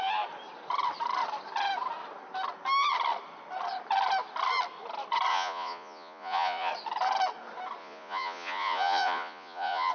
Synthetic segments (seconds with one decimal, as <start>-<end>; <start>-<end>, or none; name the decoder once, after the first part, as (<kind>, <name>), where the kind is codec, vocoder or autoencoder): 5.3-6.7 (vocoder, Vocos); 7.8-9.9